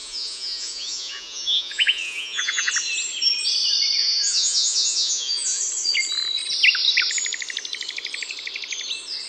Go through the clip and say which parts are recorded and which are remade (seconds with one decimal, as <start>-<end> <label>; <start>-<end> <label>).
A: 0.0-2.7 remade; 2.7-4.0 recorded; 4.0-5.6 remade; 5.6-9.3 recorded